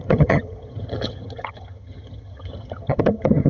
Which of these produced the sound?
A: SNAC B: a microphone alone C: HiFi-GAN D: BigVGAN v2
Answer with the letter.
C